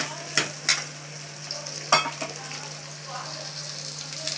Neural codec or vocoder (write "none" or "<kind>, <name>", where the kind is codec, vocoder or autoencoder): none